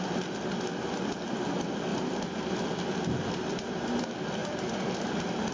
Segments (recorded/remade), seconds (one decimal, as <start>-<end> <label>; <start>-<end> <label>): 0.0-1.9 recorded; 1.9-3.5 remade; 3.5-4.4 recorded; 4.4-5.0 remade; 5.0-5.5 recorded

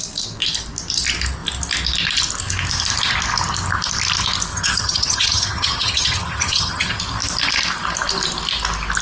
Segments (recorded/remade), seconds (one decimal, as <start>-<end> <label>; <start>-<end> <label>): 0.0-4.5 recorded; 4.5-7.0 remade; 7.0-9.0 recorded

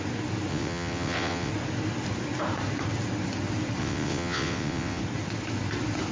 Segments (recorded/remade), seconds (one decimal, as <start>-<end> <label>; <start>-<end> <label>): 0.0-0.5 recorded; 0.5-1.5 remade; 1.5-3.8 recorded; 3.8-5.0 remade; 5.0-6.1 recorded

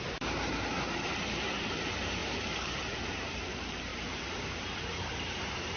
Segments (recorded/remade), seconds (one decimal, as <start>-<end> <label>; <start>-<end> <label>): 0.0-5.8 remade

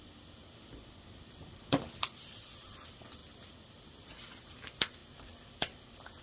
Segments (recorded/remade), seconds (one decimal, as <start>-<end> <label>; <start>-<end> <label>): 0.0-6.2 recorded

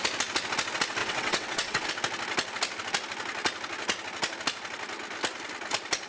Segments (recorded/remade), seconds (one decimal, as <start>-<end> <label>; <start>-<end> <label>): 0.0-1.0 recorded; 1.0-1.9 remade; 1.9-6.1 recorded